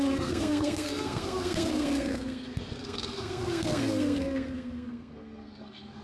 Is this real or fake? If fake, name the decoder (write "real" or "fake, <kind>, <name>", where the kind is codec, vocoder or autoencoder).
fake, codec, SNAC